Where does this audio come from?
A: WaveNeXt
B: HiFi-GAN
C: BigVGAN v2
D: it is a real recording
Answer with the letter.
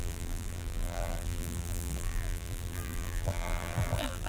C